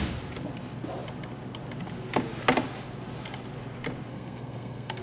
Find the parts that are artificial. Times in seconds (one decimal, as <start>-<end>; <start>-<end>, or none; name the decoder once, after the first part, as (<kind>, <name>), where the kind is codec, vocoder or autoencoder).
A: 4.1-5.0 (codec, SNAC)